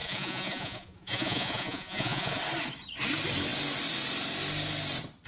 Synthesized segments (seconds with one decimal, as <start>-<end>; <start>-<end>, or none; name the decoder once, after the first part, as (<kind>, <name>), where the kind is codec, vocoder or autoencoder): 0.0-2.4 (vocoder, Vocos)